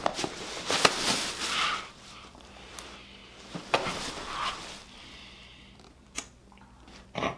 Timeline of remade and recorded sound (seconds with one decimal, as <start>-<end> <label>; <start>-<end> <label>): 0.0-1.9 recorded; 1.9-3.2 remade; 3.2-4.5 recorded; 4.5-7.4 remade